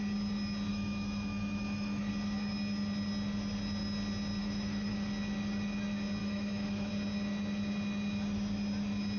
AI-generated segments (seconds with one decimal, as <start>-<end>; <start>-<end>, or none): 0.7-2.1; 4.4-4.9; 6.2-6.9

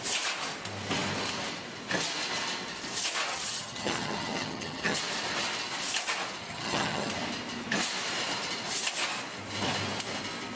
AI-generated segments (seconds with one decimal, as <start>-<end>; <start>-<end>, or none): 3.3-5.0; 6.4-7.1

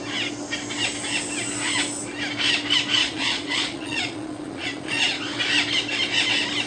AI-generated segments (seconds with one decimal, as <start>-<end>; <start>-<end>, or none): 3.0-5.2

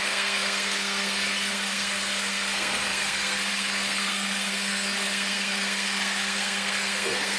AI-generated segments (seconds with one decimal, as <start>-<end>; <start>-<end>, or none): 0.0-7.4